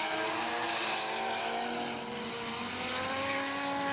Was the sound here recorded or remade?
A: recorded